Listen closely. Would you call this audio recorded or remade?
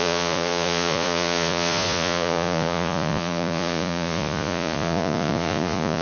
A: remade